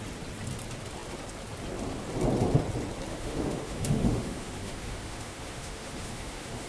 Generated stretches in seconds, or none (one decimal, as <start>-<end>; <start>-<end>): 3.1-6.7